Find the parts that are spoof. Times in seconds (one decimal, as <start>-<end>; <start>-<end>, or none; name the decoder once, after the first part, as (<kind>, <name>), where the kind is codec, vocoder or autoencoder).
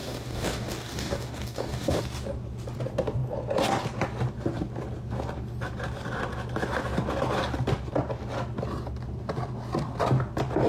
0.0-2.0 (codec, DAC)